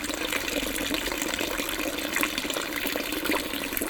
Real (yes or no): no